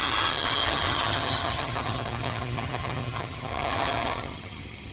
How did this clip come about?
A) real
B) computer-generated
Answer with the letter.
B